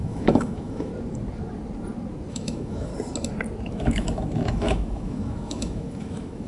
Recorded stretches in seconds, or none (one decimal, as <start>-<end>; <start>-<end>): 0.9-2.3; 2.9-3.7